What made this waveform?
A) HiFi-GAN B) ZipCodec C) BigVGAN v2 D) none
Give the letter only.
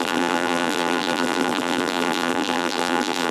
C